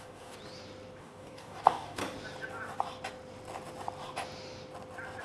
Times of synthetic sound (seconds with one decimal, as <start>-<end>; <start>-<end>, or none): 0.0-0.4; 1.0-2.0

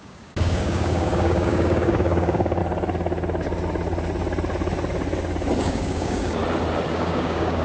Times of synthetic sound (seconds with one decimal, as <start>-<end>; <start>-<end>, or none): 0.0-2.6; 5.6-6.4; 6.9-7.6

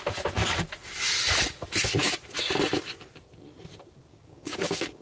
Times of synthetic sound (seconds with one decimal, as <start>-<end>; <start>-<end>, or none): 4.1-5.0

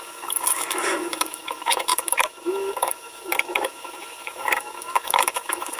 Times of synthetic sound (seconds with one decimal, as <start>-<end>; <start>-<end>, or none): 0.0-5.8

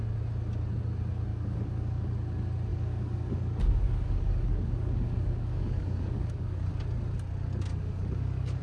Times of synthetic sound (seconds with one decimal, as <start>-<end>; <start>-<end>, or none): 1.3-2.1; 2.7-6.7; 7.7-8.6

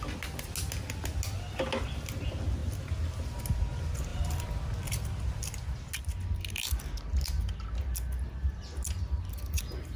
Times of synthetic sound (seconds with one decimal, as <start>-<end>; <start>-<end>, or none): none

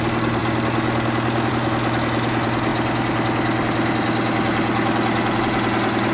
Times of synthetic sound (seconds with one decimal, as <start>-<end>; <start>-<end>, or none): none